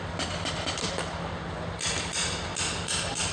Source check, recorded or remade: recorded